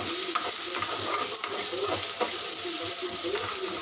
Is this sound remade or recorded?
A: recorded